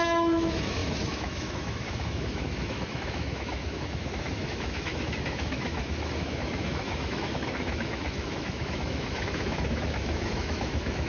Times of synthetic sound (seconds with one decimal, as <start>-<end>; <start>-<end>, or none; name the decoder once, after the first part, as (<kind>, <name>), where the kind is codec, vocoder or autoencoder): 0.0-11.1 (autoencoder, DAC-VAE)